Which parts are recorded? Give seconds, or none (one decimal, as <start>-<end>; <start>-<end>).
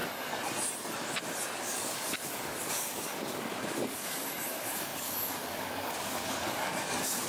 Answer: 0.0-1.6